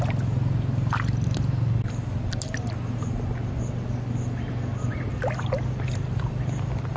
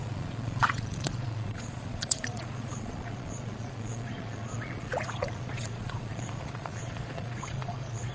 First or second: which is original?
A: first